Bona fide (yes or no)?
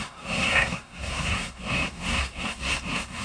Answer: no